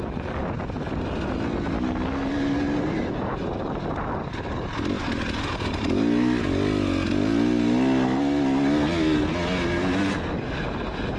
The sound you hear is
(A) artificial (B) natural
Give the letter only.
B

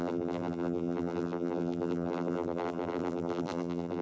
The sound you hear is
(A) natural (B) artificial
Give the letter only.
B